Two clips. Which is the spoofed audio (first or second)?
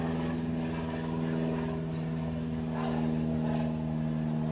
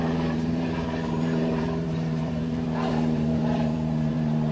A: second